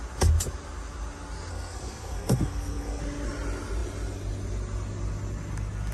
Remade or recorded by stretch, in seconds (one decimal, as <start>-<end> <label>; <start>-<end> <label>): 0.0-1.5 recorded; 1.5-3.0 remade; 3.0-5.9 recorded